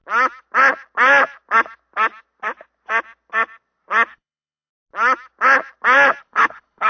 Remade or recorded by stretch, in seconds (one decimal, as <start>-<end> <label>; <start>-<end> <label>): 0.0-4.1 recorded; 4.1-4.7 remade; 4.7-6.2 recorded; 6.2-6.9 remade